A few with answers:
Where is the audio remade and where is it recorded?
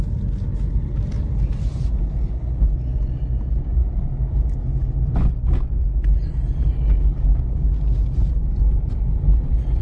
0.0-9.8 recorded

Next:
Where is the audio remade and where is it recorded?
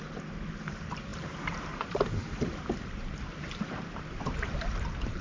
0.0-5.2 remade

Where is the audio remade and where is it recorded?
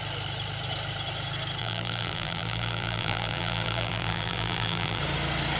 0.0-1.6 recorded; 1.6-5.0 remade; 5.0-5.6 recorded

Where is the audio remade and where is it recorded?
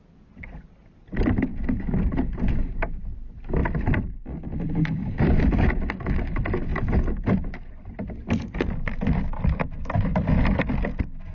0.0-3.6 recorded; 3.6-4.7 remade; 4.7-6.7 recorded; 6.7-7.5 remade; 7.5-11.3 recorded